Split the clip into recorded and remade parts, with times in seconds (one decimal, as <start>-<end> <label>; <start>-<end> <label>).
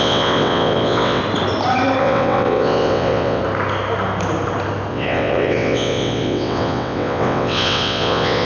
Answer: 0.0-1.2 remade; 1.2-2.0 recorded; 2.0-3.4 remade; 3.4-4.9 recorded; 4.9-8.4 remade